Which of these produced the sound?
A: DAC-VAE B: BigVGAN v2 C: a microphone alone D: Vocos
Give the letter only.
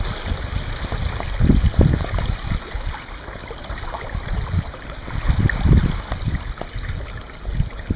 C